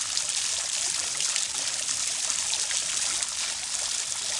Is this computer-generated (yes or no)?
no